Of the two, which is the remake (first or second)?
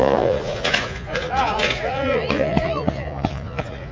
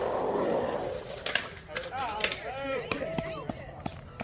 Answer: first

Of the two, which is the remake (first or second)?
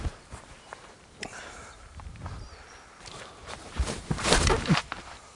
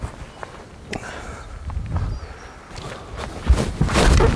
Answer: first